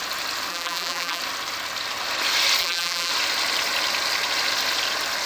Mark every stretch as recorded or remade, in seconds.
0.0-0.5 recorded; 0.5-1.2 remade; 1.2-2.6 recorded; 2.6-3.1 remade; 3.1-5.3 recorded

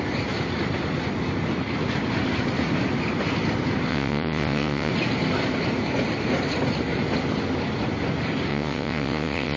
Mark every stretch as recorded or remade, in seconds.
0.0-3.9 recorded; 3.9-4.9 remade; 4.9-8.5 recorded; 8.5-9.6 remade

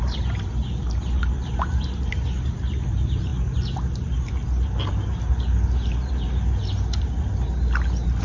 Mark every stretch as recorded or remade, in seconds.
0.0-8.2 recorded